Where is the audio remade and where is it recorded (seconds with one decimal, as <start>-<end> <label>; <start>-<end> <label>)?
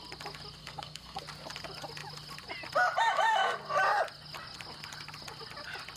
0.0-0.6 recorded; 0.6-1.2 remade; 1.2-6.0 recorded